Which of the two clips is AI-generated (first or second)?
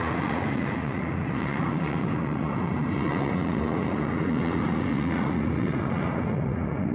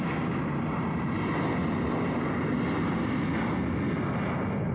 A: first